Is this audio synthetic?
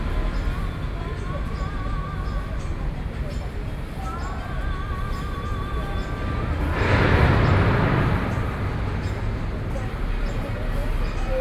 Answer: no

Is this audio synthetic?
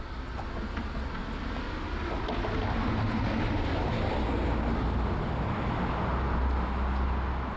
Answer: no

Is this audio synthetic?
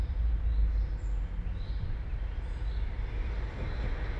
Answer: no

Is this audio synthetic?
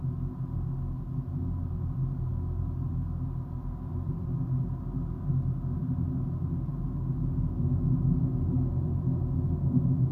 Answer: no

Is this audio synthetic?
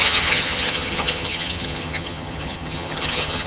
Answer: yes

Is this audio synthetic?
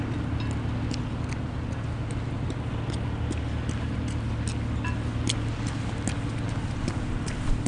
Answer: no